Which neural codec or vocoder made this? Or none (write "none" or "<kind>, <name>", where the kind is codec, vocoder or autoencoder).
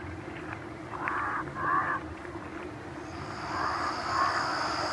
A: none